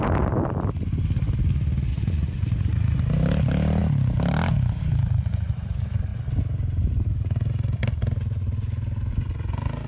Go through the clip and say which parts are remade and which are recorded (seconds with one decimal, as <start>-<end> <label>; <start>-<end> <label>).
0.0-1.9 recorded; 1.9-3.0 remade; 3.0-9.9 recorded